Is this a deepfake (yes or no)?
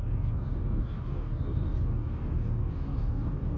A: yes